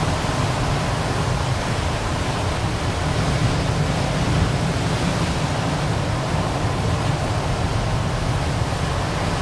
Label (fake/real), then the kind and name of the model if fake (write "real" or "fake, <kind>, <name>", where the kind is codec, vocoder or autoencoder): real